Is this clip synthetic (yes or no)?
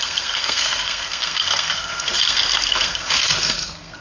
yes